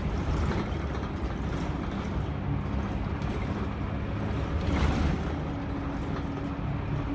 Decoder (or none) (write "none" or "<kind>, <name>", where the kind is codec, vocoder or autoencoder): none